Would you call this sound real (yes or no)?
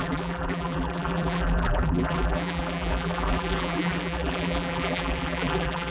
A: no